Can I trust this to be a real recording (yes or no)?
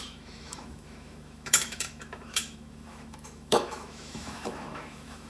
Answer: no